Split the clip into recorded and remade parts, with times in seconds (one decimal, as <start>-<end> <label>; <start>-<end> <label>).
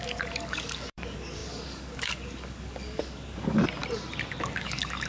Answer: 0.0-3.6 remade; 3.6-4.4 recorded; 4.4-5.1 remade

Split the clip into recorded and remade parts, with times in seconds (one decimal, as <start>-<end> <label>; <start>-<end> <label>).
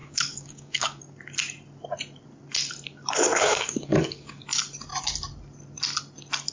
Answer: 0.0-1.0 remade; 1.0-3.3 recorded; 3.3-4.4 remade; 4.4-6.5 recorded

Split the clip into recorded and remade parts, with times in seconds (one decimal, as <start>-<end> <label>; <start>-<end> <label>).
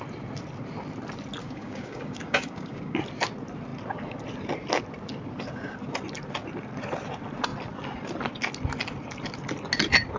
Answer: 0.0-1.4 recorded; 1.4-3.0 remade; 3.0-10.2 recorded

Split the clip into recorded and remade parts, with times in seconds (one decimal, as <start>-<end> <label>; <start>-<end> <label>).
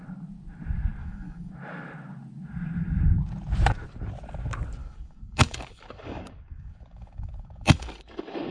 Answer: 0.0-1.0 recorded; 1.0-1.5 remade; 1.5-4.8 recorded; 4.8-8.5 remade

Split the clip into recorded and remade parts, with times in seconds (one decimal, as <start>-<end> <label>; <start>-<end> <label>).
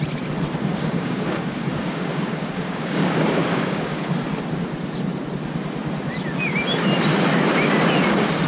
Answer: 0.0-0.6 recorded; 0.6-4.0 remade; 4.0-8.5 recorded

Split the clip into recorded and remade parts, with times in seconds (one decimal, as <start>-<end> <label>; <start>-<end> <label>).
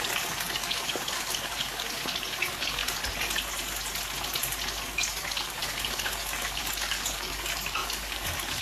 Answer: 0.0-2.8 remade; 2.8-4.8 recorded; 4.8-8.6 remade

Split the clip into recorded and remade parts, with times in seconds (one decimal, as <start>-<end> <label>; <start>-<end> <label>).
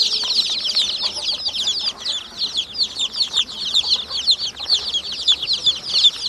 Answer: 0.0-6.3 recorded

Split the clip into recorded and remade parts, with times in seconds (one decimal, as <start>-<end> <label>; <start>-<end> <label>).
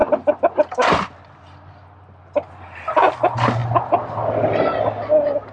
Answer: 0.0-5.5 recorded